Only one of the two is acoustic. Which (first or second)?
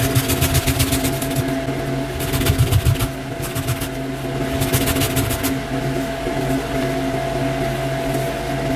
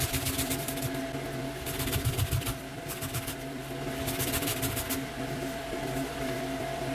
first